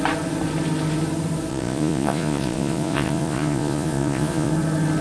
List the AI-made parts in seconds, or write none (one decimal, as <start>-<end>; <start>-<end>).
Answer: 1.5-4.5